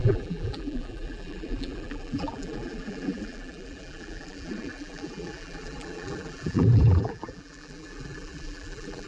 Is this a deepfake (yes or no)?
yes